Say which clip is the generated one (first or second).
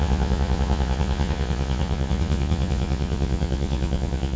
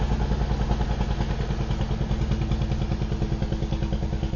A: first